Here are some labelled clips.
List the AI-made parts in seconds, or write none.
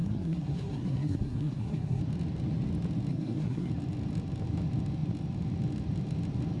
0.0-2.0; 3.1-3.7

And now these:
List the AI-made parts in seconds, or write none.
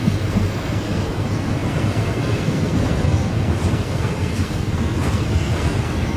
0.0-6.2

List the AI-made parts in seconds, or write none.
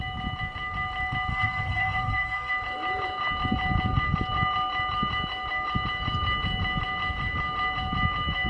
1.3-2.5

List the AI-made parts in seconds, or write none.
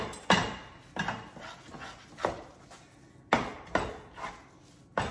none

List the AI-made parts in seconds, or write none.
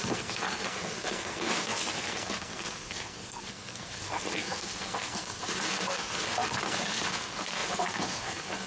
0.0-8.7